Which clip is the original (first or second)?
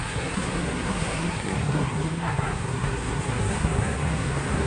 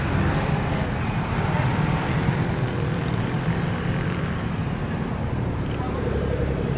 second